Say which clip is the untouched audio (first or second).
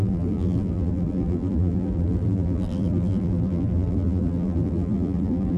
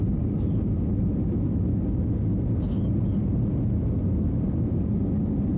second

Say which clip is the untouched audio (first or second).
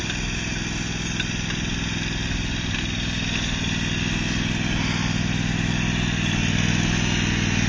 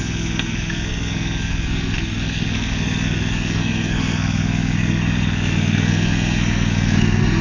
first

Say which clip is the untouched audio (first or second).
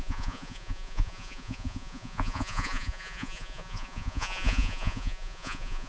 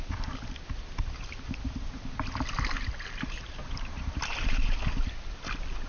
second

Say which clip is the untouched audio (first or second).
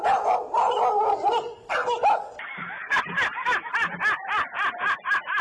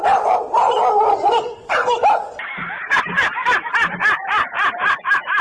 first